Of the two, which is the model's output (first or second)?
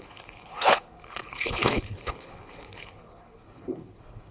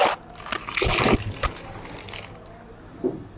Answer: first